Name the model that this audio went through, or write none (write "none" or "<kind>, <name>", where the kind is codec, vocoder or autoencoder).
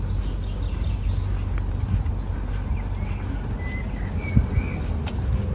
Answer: none